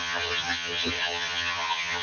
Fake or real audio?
fake